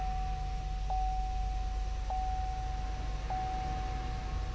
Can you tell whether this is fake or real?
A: real